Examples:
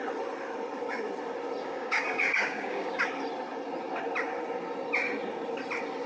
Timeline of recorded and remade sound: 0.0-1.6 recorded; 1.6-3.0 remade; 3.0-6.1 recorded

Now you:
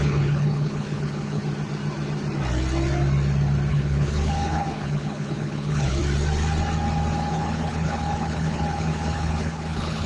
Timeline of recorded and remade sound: 0.0-1.4 remade; 1.4-3.7 recorded; 3.7-6.0 remade; 6.0-7.3 recorded; 7.3-10.1 remade